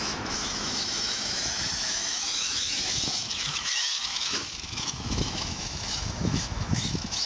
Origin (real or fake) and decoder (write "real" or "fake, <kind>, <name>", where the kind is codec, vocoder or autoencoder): fake, autoencoder, DAC-VAE